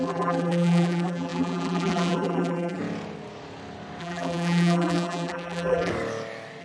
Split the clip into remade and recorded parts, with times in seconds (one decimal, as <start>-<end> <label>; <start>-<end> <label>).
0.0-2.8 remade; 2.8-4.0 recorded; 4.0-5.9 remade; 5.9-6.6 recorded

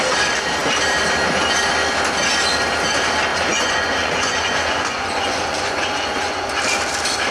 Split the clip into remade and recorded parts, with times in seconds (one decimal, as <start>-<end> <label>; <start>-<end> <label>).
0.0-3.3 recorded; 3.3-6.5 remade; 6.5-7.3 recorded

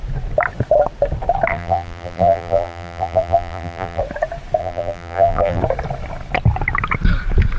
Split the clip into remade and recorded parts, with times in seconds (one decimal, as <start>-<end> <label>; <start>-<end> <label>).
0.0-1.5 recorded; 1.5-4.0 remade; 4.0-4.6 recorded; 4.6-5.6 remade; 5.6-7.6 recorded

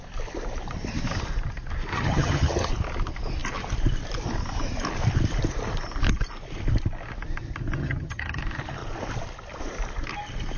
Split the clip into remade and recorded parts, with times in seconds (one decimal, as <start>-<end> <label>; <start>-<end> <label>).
0.0-1.9 recorded; 1.9-2.7 remade; 2.7-7.8 recorded; 7.8-8.4 remade; 8.4-10.6 recorded